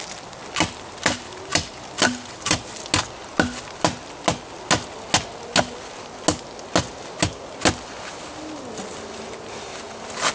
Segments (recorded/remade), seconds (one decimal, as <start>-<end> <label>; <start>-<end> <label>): 0.0-1.5 recorded; 1.5-2.7 remade; 2.7-10.3 recorded